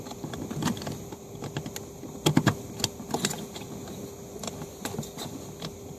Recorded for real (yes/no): yes